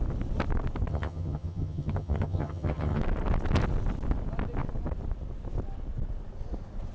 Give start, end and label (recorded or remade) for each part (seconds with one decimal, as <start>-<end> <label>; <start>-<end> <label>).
0.0-0.9 recorded; 0.9-3.0 remade; 3.0-6.9 recorded